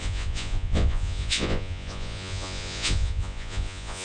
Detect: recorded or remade remade